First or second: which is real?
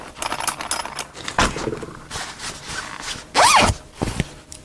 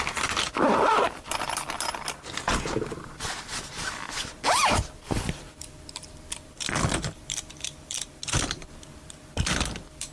first